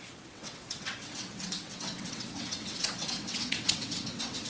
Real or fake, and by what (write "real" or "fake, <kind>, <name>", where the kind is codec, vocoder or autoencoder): fake, vocoder, WaveNeXt